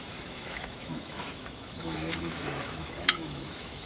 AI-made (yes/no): yes